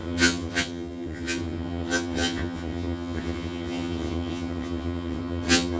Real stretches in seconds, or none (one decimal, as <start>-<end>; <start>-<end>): none